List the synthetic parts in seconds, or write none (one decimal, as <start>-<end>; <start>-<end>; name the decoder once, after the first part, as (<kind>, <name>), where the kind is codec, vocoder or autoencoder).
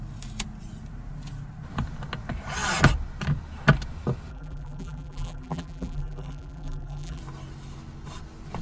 4.3-7.2 (vocoder, BigVGAN v2)